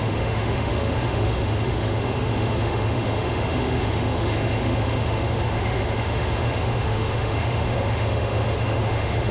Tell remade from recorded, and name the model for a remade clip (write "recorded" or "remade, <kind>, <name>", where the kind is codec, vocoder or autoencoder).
remade, autoencoder, DAC-VAE